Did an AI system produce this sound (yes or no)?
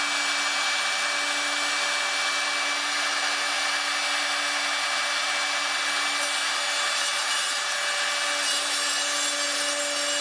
no